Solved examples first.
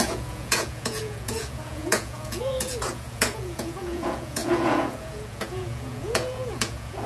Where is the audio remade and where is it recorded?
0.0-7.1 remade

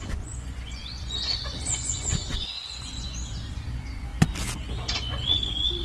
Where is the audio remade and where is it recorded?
0.0-4.1 remade; 4.1-4.7 recorded; 4.7-5.8 remade

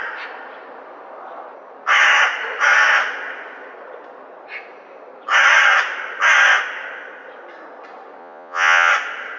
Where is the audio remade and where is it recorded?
0.0-8.2 recorded; 8.2-8.9 remade; 8.9-9.4 recorded

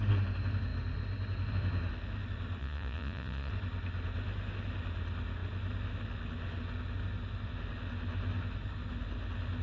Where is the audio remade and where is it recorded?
0.0-2.6 recorded; 2.6-3.5 remade; 3.5-9.6 recorded

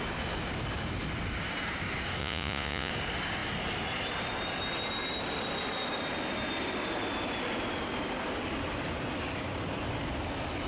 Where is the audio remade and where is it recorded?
0.0-2.2 recorded; 2.2-2.9 remade; 2.9-10.7 recorded

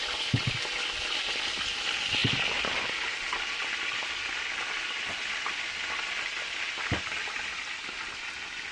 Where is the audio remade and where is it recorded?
0.0-8.7 recorded